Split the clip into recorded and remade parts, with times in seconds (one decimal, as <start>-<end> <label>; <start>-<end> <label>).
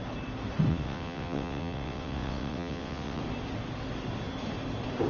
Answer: 0.0-0.7 recorded; 0.7-3.2 remade; 3.2-5.1 recorded